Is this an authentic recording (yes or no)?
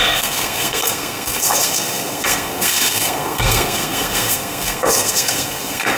no